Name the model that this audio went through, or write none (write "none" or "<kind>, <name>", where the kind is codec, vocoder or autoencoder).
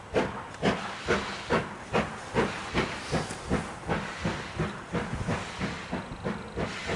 none